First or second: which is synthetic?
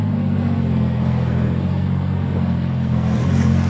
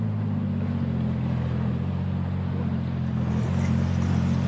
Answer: first